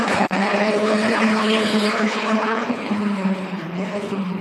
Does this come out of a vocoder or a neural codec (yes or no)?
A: yes